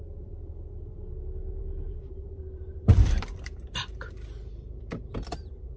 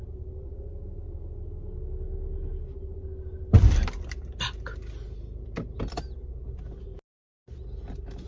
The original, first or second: second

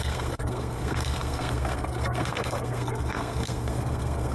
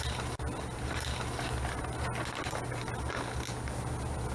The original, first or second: second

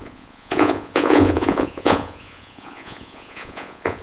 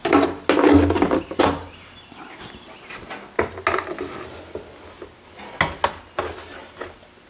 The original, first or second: second